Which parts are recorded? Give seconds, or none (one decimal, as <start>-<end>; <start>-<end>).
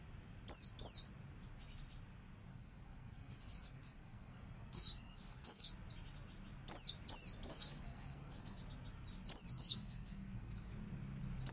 0.0-2.5; 5.7-7.5; 8.6-9.5; 10.7-11.5